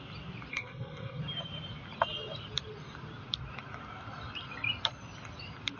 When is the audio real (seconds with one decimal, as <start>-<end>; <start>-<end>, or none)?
0.0-0.5; 1.2-5.8